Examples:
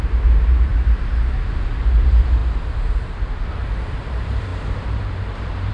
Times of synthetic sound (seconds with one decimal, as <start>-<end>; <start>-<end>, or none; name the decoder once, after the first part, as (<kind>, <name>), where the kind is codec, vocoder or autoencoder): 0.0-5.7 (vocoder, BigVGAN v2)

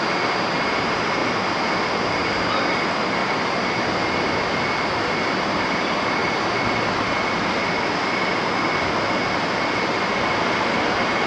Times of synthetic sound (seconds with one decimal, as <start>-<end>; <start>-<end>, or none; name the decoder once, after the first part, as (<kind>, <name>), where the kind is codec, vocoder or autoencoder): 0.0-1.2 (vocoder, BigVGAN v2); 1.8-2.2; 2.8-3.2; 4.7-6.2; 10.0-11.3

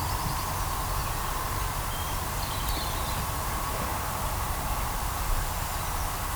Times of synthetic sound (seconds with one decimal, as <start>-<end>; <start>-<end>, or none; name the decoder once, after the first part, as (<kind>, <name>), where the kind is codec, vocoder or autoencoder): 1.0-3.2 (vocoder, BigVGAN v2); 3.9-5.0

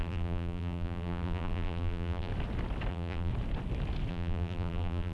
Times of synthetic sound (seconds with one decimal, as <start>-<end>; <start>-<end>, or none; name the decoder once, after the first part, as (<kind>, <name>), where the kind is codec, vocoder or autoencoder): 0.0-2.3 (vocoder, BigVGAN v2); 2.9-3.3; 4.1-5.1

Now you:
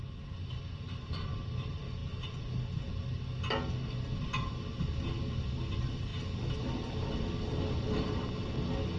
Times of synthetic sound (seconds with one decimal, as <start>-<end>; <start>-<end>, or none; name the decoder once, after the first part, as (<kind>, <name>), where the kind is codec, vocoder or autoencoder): none

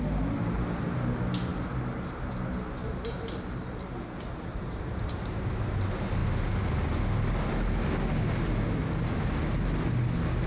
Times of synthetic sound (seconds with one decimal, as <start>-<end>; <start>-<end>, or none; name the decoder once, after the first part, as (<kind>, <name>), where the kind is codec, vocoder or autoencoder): 2.8-5.6 (vocoder, BigVGAN v2)

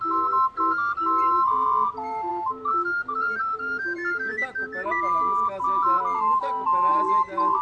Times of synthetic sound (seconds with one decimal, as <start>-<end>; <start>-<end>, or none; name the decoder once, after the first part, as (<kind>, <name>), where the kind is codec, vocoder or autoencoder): 0.0-7.6 (vocoder, BigVGAN v2)

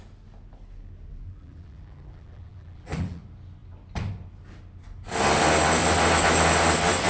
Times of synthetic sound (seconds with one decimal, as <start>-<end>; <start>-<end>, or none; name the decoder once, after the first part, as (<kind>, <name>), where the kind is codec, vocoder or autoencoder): 1.1-3.2 (vocoder, BigVGAN v2)